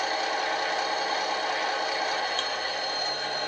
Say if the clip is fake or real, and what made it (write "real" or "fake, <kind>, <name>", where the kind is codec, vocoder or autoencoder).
real